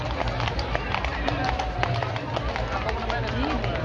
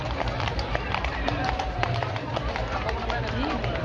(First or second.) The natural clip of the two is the first